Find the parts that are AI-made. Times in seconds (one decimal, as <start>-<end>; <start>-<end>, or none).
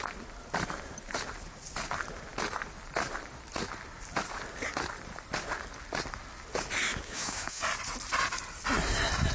6.9-7.6